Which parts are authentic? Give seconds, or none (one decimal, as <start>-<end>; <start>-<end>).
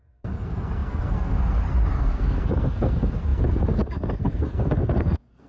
none